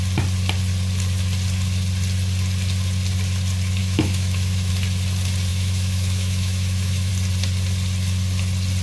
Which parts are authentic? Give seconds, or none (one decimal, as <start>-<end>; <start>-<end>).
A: 0.0-3.8; 4.7-5.5; 7.1-8.8